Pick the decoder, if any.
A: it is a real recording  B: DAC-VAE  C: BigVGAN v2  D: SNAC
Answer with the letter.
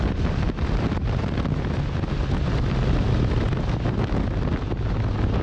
A